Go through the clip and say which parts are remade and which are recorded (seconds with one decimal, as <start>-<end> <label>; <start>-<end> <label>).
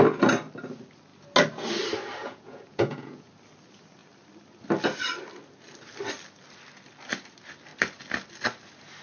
0.0-2.2 recorded; 2.2-3.3 remade; 3.3-9.0 recorded